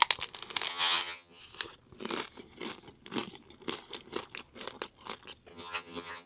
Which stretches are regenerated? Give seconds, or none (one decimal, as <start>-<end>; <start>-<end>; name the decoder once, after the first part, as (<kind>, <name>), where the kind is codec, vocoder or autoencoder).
0.7-1.4 (vocoder, HiFi-GAN); 5.5-6.3